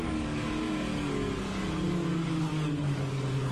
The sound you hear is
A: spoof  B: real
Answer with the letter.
A